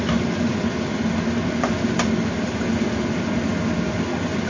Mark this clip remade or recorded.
recorded